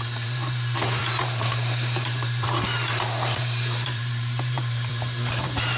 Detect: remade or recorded remade